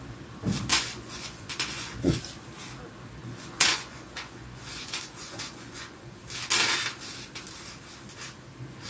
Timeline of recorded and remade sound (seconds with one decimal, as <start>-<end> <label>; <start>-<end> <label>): 0.0-0.7 recorded; 0.7-2.1 remade; 2.1-3.2 recorded; 3.2-6.2 remade; 6.2-8.9 recorded